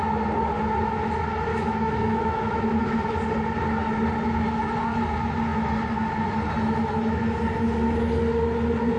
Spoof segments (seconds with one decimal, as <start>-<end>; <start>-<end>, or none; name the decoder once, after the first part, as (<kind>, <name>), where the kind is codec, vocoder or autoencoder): 1.5-3.1 (autoencoder, DAC-VAE)